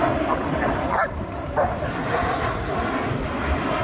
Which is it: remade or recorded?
recorded